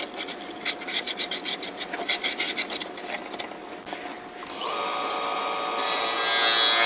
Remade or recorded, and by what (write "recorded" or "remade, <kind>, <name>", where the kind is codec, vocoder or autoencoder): recorded